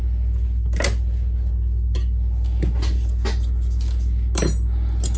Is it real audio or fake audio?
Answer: real